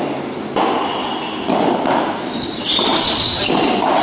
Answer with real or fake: real